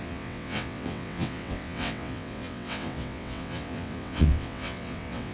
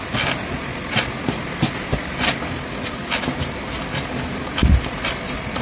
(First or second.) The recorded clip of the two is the second